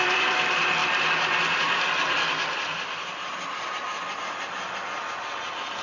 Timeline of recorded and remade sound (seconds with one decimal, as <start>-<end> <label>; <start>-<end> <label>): 0.0-5.8 remade